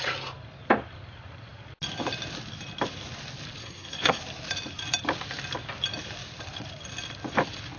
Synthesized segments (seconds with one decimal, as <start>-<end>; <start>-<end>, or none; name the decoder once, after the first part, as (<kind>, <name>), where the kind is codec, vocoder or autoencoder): 3.6-4.2 (codec, SNAC)